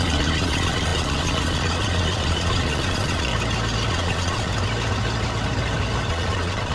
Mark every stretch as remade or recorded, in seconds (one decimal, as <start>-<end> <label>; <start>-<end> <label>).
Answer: 0.0-3.3 remade; 3.3-3.9 recorded; 3.9-4.5 remade; 4.5-6.1 recorded; 6.1-6.7 remade

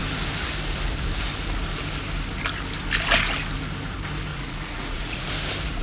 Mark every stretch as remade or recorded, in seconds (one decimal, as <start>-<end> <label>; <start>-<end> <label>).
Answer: 0.0-4.3 recorded; 4.3-5.3 remade; 5.3-5.8 recorded

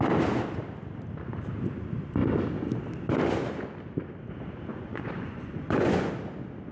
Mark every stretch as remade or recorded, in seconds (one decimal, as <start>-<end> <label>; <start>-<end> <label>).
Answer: 0.0-4.7 recorded; 4.7-6.1 remade; 6.1-6.7 recorded

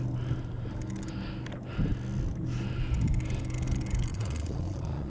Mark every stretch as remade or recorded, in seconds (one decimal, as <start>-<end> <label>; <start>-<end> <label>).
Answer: 0.0-4.1 recorded; 4.1-5.1 remade